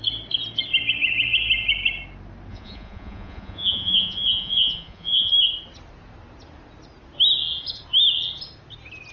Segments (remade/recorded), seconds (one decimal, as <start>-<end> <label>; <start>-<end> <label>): 0.0-2.5 recorded; 2.5-5.3 remade; 5.3-9.1 recorded